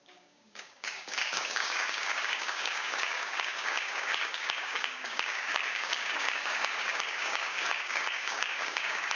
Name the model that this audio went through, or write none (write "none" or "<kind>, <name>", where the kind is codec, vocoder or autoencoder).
codec, DAC